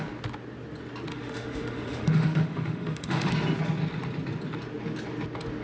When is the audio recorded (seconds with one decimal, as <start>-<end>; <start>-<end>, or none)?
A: 0.0-1.1; 3.3-5.6